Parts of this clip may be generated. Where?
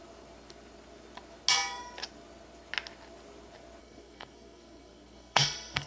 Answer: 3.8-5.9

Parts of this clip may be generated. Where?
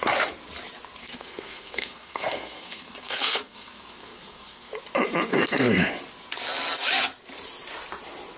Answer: 1.0-4.7; 5.3-5.9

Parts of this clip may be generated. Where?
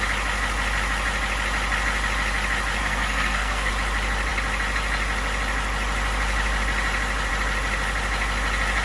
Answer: 2.8-3.7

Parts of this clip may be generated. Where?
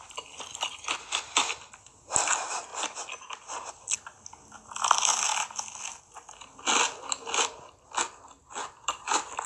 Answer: none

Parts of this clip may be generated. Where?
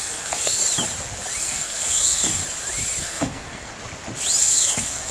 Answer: 0.0-0.6; 1.4-2.4; 3.0-3.7; 4.4-5.1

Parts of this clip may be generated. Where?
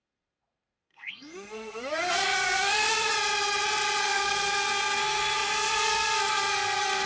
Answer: 0.0-3.1; 4.0-7.1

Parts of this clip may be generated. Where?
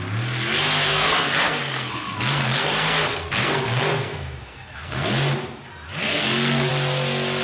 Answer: 0.9-5.1; 6.1-6.7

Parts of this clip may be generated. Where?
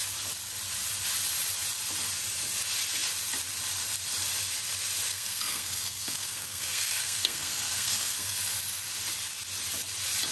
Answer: 5.1-8.4